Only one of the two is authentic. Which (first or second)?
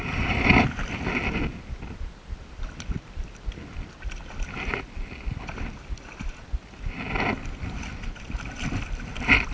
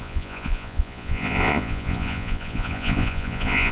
first